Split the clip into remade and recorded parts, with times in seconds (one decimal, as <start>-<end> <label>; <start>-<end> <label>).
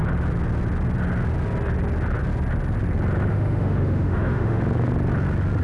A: 0.0-3.3 recorded; 3.3-4.6 remade; 4.6-5.6 recorded